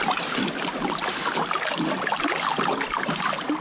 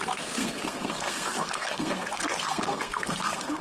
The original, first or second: first